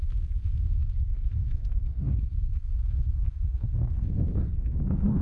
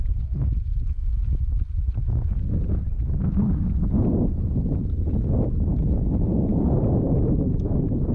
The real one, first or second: second